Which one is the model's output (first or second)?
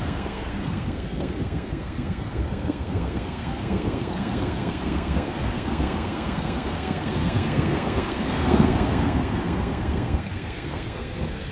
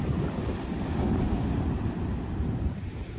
first